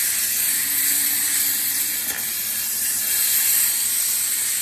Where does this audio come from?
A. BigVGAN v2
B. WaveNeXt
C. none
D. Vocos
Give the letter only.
C